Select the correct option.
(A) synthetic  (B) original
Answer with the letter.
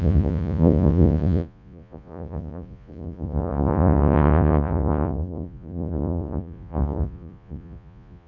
A